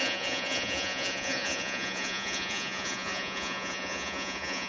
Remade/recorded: remade